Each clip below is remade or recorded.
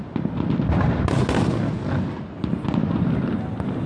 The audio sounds recorded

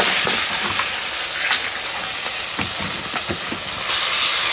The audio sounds recorded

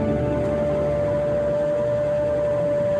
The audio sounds remade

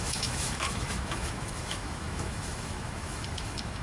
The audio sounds remade